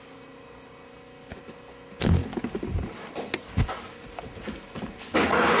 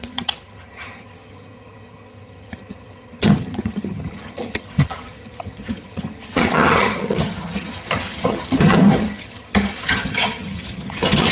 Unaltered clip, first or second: first